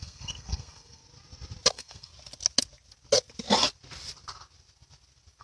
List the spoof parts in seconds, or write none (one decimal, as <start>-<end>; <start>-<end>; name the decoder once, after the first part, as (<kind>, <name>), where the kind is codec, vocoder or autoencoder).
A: 0.0-1.0 (codec, SNAC); 1.7-2.1